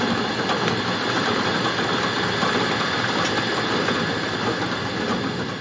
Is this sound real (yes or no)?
yes